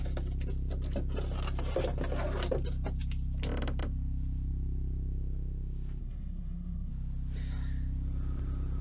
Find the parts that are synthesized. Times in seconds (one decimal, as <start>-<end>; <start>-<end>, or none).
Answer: 6.0-6.9